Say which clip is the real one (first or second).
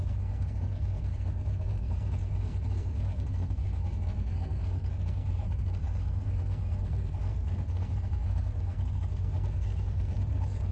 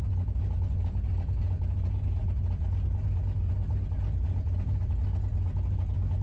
second